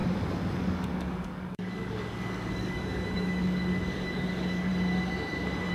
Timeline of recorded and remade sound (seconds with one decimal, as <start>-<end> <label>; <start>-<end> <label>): 0.0-4.7 remade; 4.7-5.7 recorded